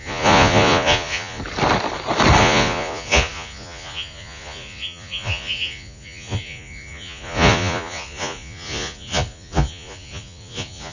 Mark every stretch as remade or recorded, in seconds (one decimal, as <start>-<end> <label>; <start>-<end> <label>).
0.0-1.4 remade; 1.4-2.4 recorded; 2.4-10.9 remade